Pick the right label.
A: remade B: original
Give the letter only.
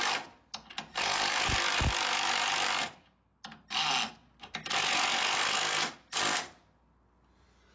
B